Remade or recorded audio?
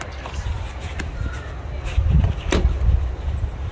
recorded